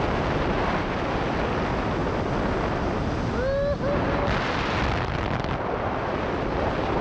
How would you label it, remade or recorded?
recorded